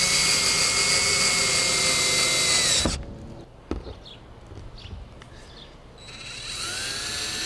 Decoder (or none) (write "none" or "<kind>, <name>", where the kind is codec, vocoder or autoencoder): none